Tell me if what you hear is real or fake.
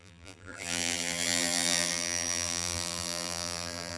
fake